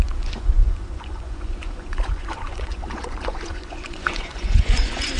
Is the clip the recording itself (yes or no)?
no